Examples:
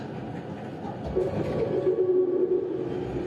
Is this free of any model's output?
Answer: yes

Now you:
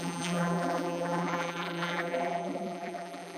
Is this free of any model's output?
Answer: no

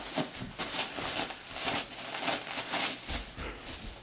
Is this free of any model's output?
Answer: yes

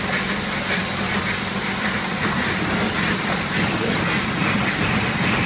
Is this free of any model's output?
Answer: no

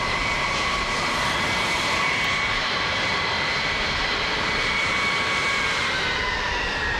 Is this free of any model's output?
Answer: no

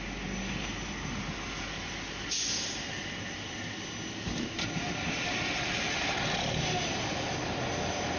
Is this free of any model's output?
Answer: yes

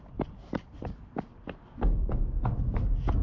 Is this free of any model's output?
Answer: no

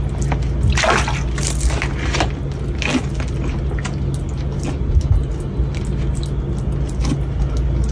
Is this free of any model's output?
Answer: yes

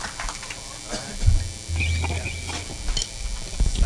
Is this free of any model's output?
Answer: yes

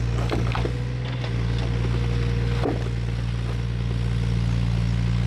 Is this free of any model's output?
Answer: yes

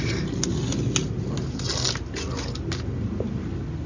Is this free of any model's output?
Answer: yes